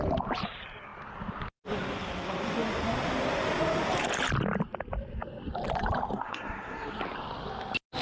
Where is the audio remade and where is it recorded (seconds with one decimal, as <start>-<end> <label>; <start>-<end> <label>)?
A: 0.0-6.1 recorded; 6.1-7.0 remade; 7.0-8.0 recorded